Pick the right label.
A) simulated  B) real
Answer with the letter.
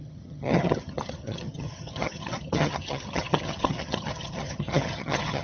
A